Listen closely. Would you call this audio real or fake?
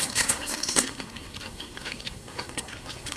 fake